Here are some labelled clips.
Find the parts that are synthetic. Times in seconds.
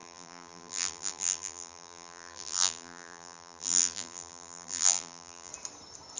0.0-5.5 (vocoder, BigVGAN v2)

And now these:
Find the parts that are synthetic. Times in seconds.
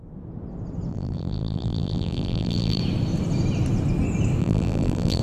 0.9-2.8 (vocoder, BigVGAN v2); 4.4-5.2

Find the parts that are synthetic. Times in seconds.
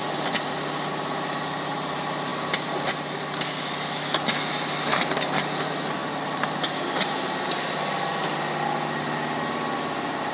none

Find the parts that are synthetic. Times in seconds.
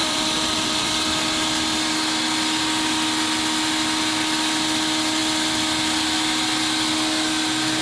0.0-0.9 (vocoder, BigVGAN v2)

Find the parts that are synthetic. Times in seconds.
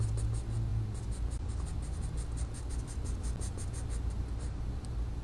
none